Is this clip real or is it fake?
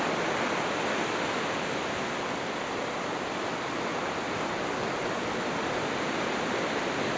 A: real